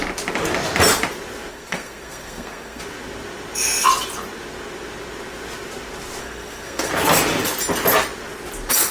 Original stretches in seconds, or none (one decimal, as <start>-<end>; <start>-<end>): 0.0-1.5; 2.8-6.2; 6.9-8.9